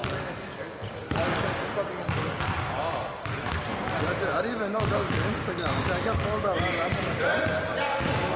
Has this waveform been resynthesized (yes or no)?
no